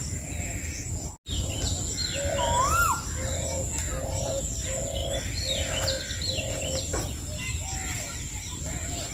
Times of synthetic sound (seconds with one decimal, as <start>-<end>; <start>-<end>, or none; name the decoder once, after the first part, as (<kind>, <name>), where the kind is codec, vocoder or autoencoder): none